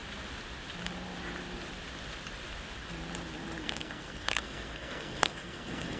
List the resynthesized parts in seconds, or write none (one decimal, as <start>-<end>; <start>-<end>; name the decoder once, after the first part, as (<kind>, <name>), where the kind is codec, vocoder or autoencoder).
3.6-6.0 (codec, SNAC)